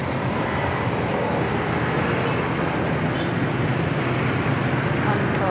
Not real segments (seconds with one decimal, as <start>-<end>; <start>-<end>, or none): none